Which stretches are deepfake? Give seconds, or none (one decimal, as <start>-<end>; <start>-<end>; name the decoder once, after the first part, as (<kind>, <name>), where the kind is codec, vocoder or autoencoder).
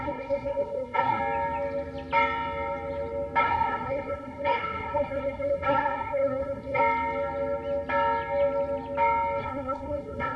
0.0-1.2 (codec, SNAC); 3.4-6.8; 9.4-10.4